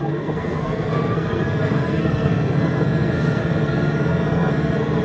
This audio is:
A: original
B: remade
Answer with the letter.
B